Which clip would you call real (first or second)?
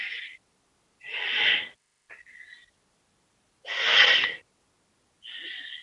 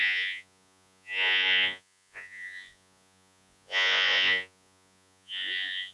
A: first